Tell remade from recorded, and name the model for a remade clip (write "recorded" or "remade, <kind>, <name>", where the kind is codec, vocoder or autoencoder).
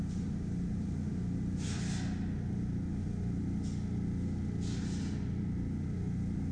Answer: recorded